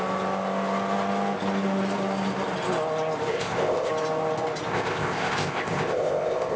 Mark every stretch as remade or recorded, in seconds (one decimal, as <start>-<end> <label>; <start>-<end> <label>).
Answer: 0.0-3.3 recorded; 3.3-3.9 remade; 3.9-4.7 recorded; 4.7-6.6 remade